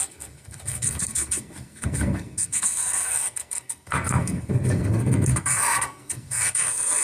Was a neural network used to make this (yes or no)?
yes